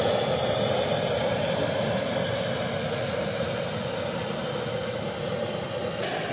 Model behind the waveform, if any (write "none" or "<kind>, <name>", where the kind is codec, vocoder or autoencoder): none